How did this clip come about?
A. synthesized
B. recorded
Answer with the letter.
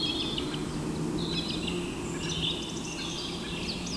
B